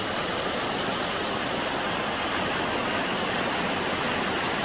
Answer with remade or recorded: recorded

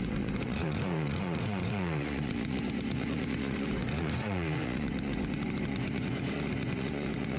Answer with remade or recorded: remade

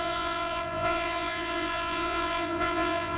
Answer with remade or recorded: remade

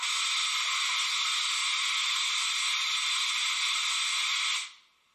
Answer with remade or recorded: recorded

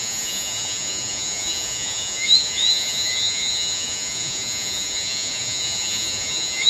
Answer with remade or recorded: remade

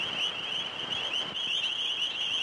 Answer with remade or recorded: recorded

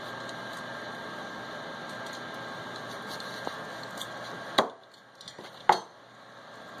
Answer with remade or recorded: recorded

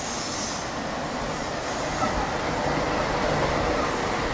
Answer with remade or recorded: recorded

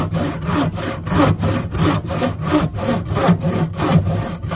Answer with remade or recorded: recorded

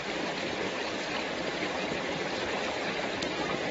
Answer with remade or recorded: recorded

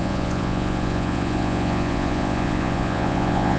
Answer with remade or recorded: remade